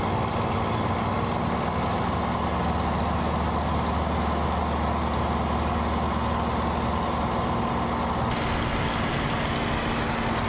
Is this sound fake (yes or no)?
no